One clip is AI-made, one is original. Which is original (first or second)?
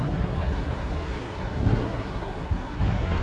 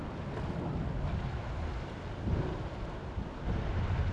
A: second